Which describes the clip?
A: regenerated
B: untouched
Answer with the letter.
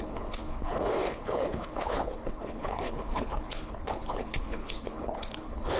A